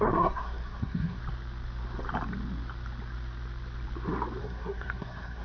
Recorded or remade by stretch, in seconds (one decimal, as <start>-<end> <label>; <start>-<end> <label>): 0.0-1.2 remade; 1.2-4.4 recorded; 4.4-5.4 remade